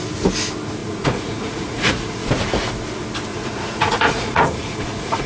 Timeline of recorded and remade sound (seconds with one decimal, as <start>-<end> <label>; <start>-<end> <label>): 0.0-0.8 recorded; 0.8-2.3 remade; 2.3-3.3 recorded; 3.3-5.3 remade